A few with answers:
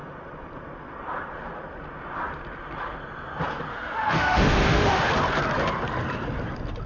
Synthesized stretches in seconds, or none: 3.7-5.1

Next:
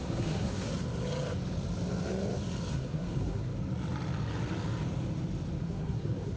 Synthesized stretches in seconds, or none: 0.0-0.7; 2.7-3.5; 5.6-6.4

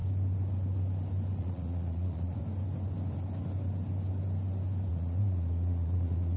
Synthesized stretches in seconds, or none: 1.4-2.4; 4.9-6.4

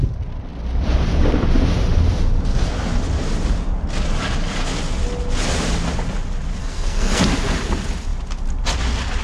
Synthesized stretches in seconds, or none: 6.6-7.2

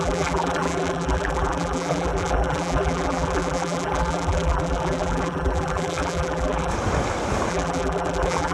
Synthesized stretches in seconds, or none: 0.0-6.7; 7.5-8.5

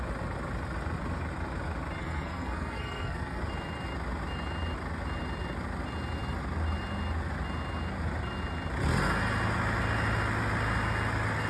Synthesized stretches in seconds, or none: 2.0-3.4

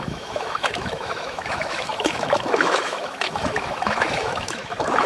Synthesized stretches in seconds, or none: 0.0-5.1